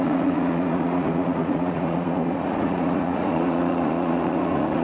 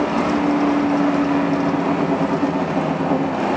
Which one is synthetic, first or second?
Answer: first